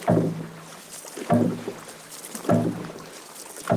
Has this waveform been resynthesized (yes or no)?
no